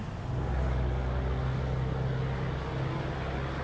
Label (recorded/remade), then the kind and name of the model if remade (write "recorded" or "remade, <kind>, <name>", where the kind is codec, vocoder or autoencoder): recorded